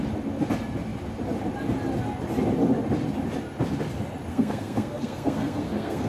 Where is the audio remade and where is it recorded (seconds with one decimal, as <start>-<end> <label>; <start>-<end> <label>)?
0.0-4.3 recorded; 4.3-6.1 remade